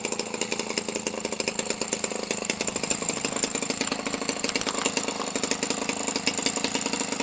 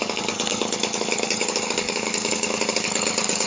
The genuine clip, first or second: first